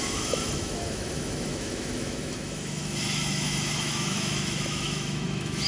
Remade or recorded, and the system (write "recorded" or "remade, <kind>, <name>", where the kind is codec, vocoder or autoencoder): remade, autoencoder, DAC-VAE